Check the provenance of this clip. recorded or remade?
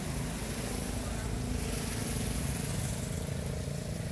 recorded